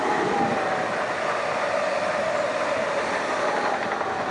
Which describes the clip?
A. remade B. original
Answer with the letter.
B